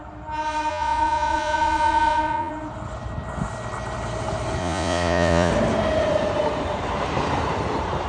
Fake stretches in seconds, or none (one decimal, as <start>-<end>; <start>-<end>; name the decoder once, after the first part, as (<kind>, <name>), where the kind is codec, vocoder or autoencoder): 0.7-2.5 (vocoder, Vocos); 4.6-5.5